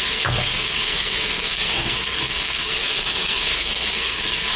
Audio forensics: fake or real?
fake